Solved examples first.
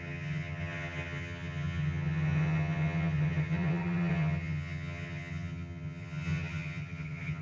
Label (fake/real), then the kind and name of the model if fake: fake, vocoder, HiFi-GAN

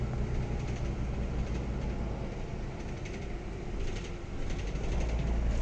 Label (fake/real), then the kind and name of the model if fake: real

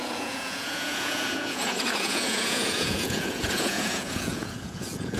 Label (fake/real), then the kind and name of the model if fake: fake, vocoder, Vocos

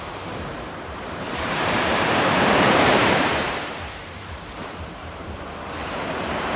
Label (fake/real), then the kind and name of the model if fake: fake, vocoder, BigVGAN v2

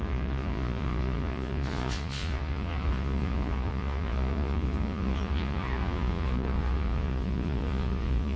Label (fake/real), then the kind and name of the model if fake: fake, vocoder, Vocos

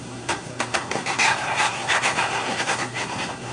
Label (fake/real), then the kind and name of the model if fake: fake, codec, SNAC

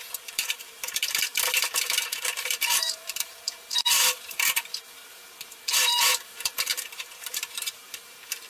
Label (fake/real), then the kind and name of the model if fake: fake, vocoder, BigVGAN v2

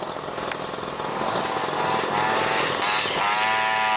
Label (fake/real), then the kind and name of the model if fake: real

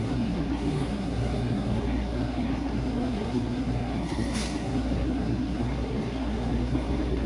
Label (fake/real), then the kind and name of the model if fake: fake, codec, SNAC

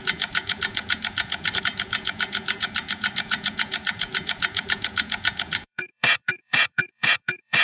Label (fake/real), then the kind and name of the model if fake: fake, vocoder, Vocos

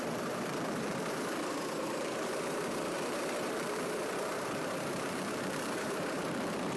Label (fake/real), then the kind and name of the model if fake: fake, vocoder, BigVGAN v2